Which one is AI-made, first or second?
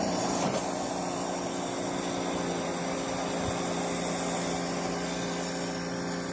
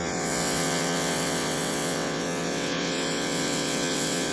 second